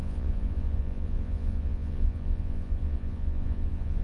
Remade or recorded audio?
remade